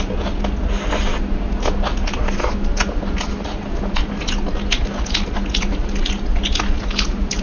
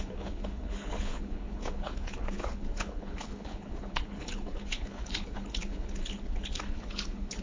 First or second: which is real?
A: first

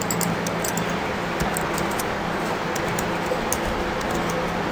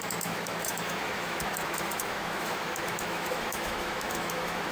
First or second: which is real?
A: first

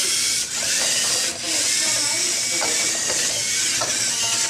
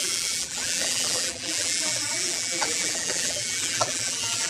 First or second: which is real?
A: first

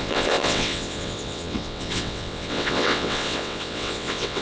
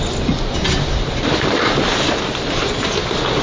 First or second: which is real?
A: second